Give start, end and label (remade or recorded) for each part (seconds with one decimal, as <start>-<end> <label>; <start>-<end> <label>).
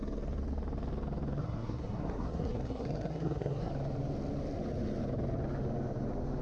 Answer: 0.0-1.4 recorded; 1.4-3.7 remade; 3.7-6.4 recorded